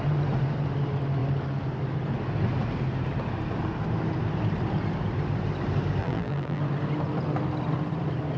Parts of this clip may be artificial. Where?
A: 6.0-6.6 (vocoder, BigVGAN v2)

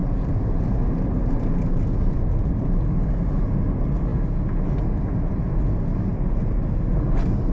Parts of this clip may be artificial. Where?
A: 0.0-2.5 (vocoder, BigVGAN v2)

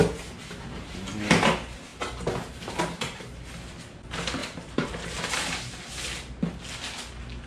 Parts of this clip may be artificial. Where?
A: 4.4-5.9 (vocoder, BigVGAN v2)